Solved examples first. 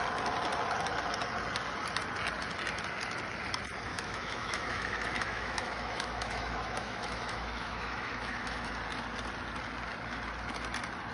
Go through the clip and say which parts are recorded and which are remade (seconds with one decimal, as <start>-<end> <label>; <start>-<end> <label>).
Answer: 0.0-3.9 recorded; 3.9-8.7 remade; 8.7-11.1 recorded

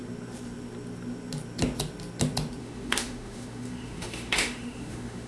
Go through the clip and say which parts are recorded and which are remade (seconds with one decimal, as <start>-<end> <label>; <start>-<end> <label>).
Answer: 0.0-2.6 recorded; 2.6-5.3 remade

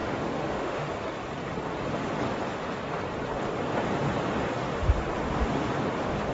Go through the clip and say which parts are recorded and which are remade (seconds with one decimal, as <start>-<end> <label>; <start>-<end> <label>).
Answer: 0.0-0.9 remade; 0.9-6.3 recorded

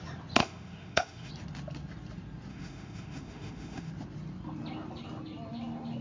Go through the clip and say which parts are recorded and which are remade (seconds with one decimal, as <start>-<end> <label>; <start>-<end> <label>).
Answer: 0.0-0.4 recorded; 0.4-1.3 remade; 1.3-2.5 recorded; 2.5-3.9 remade; 3.9-6.0 recorded

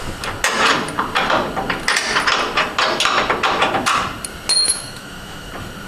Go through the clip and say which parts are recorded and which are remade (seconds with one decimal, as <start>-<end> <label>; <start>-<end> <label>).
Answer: 0.0-4.6 recorded; 4.6-5.5 remade; 5.5-5.9 recorded

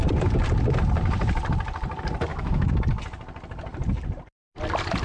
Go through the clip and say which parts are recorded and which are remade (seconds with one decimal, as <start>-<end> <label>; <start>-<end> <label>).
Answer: 0.0-2.3 recorded; 2.3-2.8 remade; 2.8-5.0 recorded